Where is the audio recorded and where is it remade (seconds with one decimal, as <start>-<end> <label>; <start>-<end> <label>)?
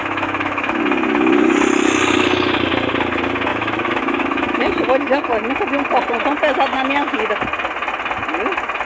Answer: 0.0-0.8 remade; 0.8-3.5 recorded; 3.5-5.3 remade; 5.3-6.7 recorded; 6.7-7.3 remade; 7.3-8.8 recorded